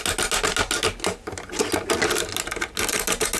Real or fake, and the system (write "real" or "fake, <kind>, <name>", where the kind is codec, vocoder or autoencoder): real